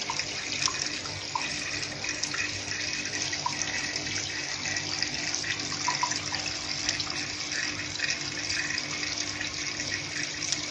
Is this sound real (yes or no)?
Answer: yes